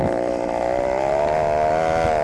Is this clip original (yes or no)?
yes